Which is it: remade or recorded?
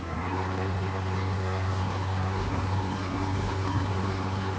remade